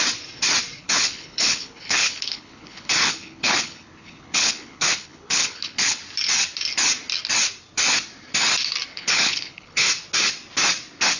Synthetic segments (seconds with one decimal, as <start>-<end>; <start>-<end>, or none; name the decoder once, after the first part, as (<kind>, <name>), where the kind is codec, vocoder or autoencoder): 0.8-6.0 (codec, HILCodec); 8.9-9.9